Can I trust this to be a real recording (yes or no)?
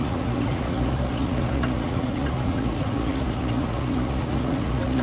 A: no